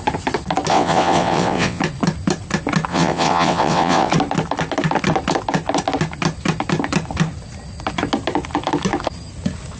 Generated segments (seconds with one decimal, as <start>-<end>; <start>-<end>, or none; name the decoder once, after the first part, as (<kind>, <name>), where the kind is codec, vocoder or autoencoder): 0.7-1.8 (vocoder, WaveNeXt); 2.9-4.1